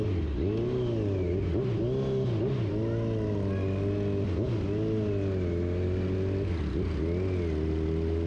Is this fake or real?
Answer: real